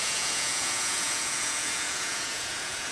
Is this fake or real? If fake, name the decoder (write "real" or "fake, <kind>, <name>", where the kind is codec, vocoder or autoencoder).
fake, vocoder, Vocos